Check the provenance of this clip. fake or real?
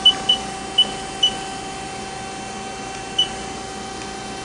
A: real